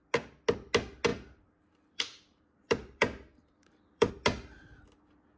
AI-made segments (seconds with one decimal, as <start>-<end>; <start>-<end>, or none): 1.1-4.1